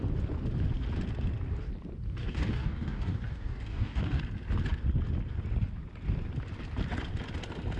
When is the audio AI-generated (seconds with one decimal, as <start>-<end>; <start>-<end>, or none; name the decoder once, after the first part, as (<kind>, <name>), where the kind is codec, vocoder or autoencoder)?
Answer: 2.2-4.2 (codec, DAC)